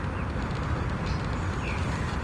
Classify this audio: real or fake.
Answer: real